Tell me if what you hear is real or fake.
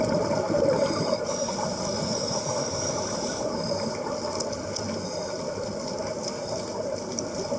real